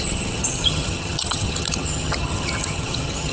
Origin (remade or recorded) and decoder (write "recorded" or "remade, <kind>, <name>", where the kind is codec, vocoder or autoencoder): remade, vocoder, HiFi-GAN